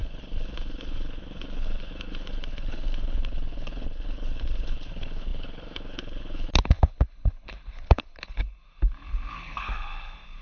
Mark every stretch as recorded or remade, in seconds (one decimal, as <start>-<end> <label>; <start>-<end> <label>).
0.0-10.4 remade